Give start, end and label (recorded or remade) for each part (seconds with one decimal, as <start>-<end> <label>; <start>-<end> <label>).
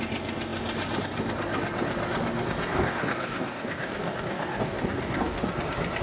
0.0-2.7 recorded; 2.7-5.4 remade; 5.4-6.0 recorded